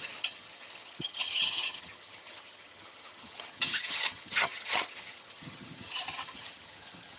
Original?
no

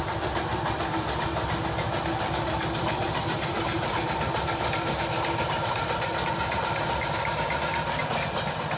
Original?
yes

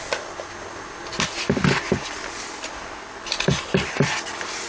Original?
yes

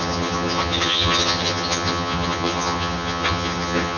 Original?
no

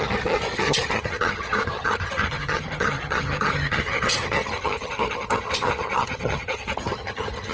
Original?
no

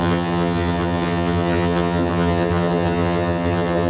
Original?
no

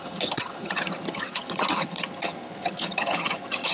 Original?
no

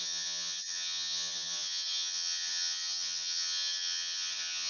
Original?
no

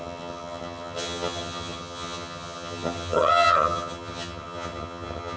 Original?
no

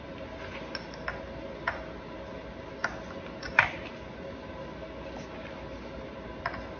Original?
yes